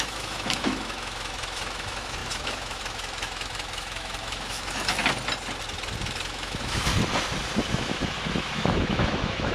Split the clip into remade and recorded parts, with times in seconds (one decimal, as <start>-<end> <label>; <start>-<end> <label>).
0.0-5.0 remade; 5.0-6.0 recorded; 6.0-6.9 remade; 6.9-7.7 recorded; 7.7-9.5 remade